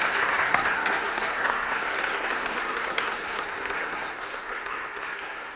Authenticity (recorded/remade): remade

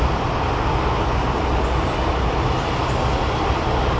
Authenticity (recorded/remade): recorded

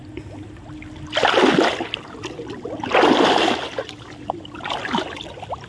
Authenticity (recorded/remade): recorded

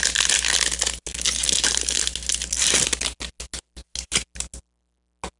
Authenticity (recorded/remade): recorded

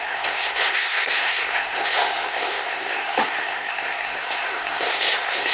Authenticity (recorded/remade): remade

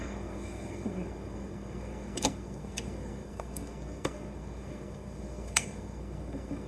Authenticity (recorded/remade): remade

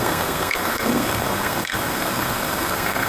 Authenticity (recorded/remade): remade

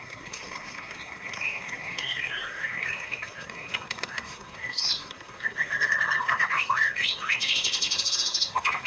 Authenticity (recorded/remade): remade